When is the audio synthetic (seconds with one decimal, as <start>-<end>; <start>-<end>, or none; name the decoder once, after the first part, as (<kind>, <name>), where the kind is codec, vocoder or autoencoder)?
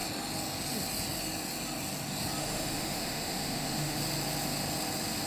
2.4-4.0 (autoencoder, DAC-VAE)